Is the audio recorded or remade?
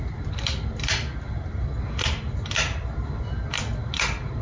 recorded